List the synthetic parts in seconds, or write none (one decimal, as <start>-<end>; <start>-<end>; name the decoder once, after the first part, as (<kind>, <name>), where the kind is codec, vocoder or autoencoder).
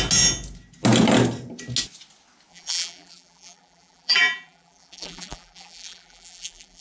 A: 2.5-6.8 (vocoder, BigVGAN v2)